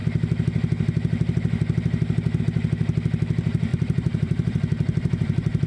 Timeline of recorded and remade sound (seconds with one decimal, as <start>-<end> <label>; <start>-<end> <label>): 0.0-3.7 recorded; 3.7-5.7 remade